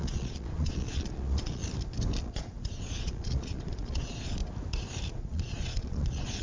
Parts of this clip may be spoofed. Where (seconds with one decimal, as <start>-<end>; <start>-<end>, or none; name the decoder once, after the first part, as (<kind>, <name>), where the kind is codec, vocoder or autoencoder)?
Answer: 0.0-1.6 (vocoder, Vocos); 2.2-4.4; 5.1-6.4